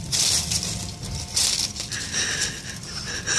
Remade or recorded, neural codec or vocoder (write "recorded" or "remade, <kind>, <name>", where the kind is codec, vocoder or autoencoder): recorded